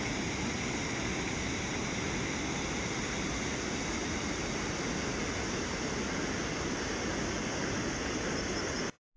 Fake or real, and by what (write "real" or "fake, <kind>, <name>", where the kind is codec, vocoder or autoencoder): real